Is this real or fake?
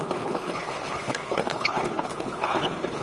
fake